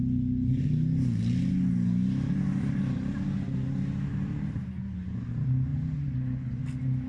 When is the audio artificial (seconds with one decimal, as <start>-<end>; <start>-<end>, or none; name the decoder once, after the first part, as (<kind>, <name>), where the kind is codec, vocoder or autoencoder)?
4.1-4.6 (vocoder, BigVGAN v2)

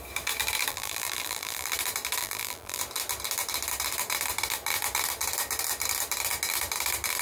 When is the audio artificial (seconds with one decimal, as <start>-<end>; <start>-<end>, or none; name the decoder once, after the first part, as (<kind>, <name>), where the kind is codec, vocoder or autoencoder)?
0.7-1.7 (vocoder, BigVGAN v2); 2.2-2.8